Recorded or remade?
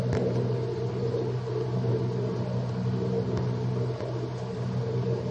recorded